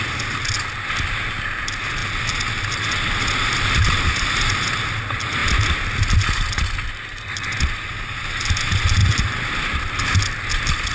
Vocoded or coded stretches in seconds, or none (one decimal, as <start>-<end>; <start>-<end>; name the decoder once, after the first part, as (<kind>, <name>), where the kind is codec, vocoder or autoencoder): none